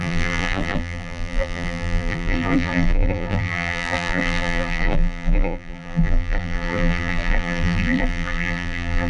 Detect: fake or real fake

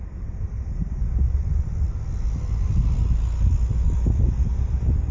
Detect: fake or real real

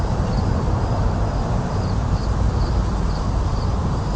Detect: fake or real fake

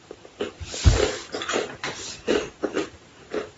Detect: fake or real fake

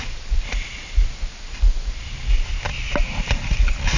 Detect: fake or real real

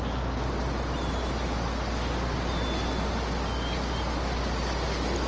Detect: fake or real real